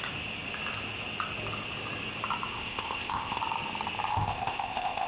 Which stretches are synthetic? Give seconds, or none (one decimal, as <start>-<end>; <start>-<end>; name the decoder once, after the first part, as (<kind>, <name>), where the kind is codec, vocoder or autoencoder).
2.5-3.4 (codec, ZipCodec); 4.1-5.1